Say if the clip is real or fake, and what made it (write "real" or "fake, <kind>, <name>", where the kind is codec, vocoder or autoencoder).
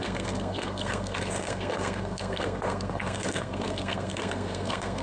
fake, codec, SNAC